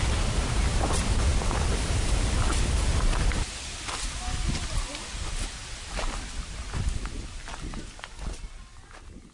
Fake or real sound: real